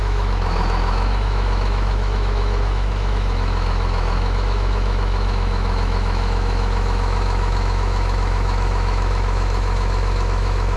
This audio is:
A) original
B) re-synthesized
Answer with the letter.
B